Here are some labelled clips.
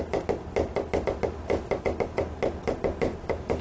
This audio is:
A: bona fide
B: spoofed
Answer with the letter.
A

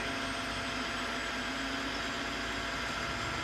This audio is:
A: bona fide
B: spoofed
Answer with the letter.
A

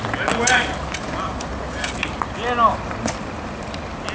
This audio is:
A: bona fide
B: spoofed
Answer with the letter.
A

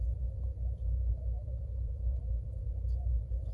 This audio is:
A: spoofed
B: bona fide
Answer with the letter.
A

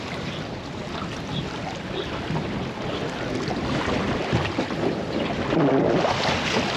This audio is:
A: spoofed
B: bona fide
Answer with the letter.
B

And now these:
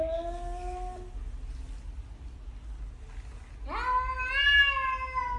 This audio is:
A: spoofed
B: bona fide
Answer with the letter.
B